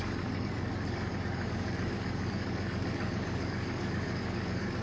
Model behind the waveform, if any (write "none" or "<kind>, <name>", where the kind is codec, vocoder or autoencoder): codec, DAC